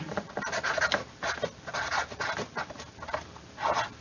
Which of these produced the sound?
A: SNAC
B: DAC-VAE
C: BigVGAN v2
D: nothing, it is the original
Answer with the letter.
D